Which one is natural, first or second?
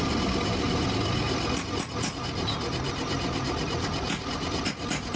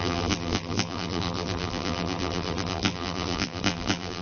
first